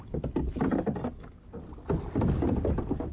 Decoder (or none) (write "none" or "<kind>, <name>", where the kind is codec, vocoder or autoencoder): none